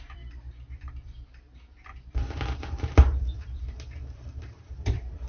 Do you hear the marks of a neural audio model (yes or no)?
yes